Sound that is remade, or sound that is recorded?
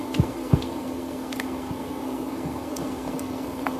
remade